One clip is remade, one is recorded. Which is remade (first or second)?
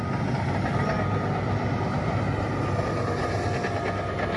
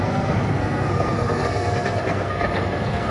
second